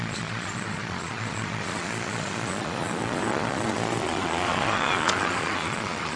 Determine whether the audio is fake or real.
fake